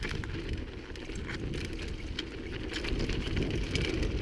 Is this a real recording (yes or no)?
yes